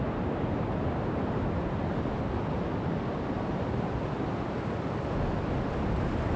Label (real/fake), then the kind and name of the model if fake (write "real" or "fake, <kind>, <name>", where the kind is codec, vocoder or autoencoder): real